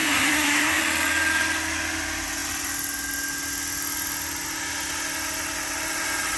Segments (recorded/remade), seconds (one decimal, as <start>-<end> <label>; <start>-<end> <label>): 0.0-0.8 remade; 0.8-6.4 recorded